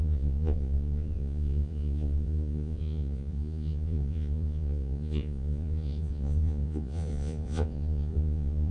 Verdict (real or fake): fake